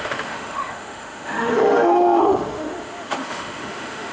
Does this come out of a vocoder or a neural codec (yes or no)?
yes